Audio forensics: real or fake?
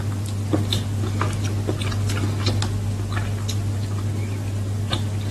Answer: real